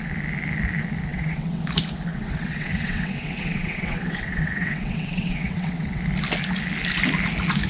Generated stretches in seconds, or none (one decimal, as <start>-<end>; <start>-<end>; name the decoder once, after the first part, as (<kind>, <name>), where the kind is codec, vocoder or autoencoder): 1.1-1.6 (vocoder, WaveNeXt); 2.1-6.0